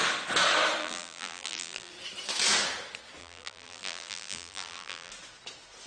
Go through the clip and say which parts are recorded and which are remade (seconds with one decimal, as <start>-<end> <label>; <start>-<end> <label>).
0.0-0.8 recorded; 0.8-1.9 remade; 1.9-3.2 recorded; 3.2-5.1 remade; 5.1-5.9 recorded